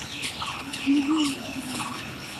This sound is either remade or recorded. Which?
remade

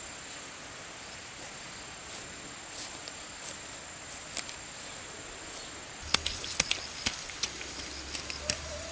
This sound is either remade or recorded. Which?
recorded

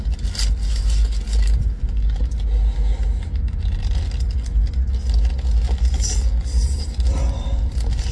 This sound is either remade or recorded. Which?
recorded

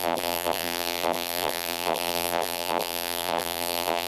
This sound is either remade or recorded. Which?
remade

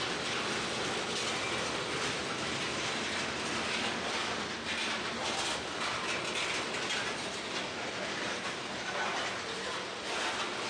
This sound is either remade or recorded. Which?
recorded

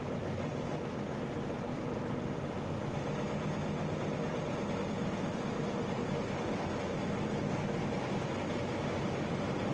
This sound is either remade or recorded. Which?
recorded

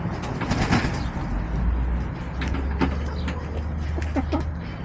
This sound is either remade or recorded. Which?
recorded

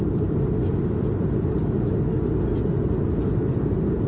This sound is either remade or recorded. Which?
recorded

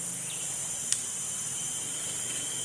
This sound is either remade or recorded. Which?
recorded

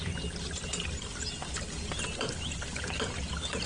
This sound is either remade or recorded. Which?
recorded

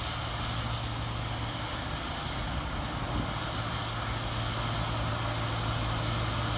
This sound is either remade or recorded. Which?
recorded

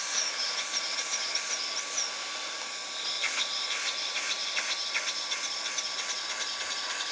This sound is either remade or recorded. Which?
recorded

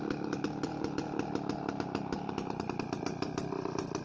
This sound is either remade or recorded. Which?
recorded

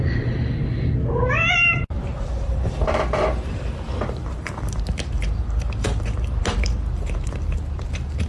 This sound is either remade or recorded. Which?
remade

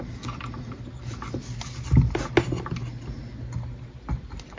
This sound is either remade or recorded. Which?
recorded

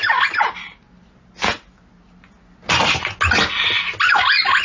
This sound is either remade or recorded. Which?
recorded